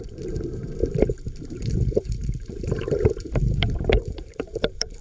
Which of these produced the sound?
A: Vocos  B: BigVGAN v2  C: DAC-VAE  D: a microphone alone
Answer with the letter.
B